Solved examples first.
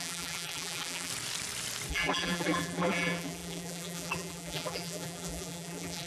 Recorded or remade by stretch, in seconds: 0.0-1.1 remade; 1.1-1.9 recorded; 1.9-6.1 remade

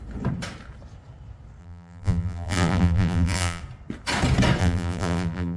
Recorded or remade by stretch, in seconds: 0.0-1.6 recorded; 1.6-3.6 remade; 3.6-4.6 recorded; 4.6-5.6 remade

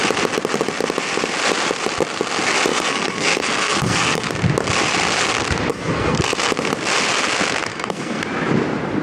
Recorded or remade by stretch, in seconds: 0.0-2.7 recorded; 2.7-4.3 remade; 4.3-5.7 recorded; 5.7-6.5 remade; 6.5-7.7 recorded; 7.7-8.2 remade; 8.2-9.0 recorded

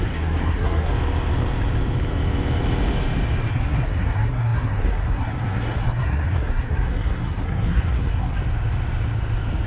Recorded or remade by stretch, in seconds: 0.0-0.9 remade; 0.9-3.5 recorded; 3.5-8.4 remade; 8.4-9.7 recorded

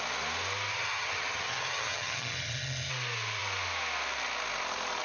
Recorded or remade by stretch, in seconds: 0.0-0.7 recorded; 0.7-2.9 remade; 2.9-5.0 recorded